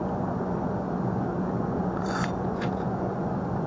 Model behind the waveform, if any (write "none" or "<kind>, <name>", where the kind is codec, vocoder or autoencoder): vocoder, Vocos